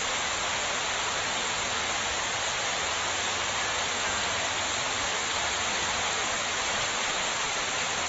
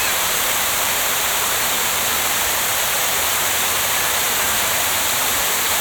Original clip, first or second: first